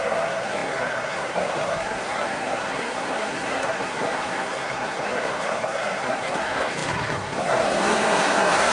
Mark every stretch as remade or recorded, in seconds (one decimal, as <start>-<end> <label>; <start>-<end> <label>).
0.0-8.7 remade